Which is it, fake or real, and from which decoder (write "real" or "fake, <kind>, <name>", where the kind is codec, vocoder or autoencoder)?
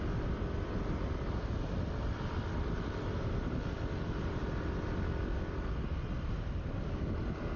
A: real